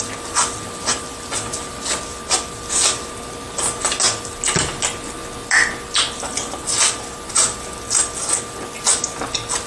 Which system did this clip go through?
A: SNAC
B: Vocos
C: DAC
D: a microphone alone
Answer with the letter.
D